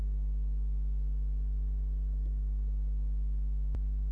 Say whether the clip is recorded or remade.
recorded